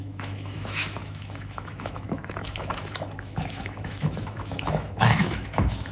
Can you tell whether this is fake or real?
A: fake